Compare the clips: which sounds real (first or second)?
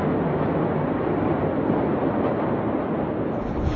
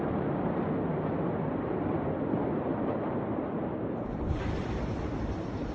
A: first